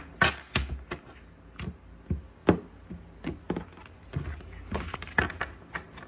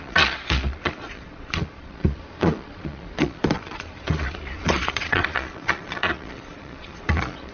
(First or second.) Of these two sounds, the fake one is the second